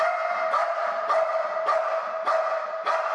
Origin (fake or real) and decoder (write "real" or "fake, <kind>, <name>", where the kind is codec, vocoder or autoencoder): real